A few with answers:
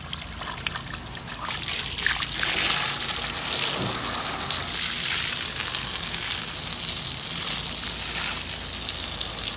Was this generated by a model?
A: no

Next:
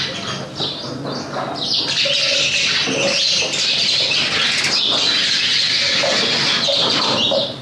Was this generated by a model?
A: no